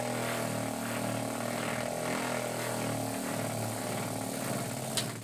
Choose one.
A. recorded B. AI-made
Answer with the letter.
A